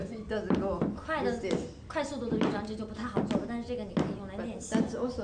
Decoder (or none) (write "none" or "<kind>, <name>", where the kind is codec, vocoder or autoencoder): none